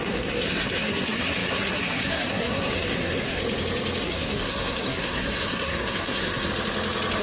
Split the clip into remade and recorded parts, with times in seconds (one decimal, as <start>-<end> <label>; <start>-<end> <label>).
0.0-3.4 remade; 3.4-4.0 recorded; 4.0-6.5 remade; 6.5-7.2 recorded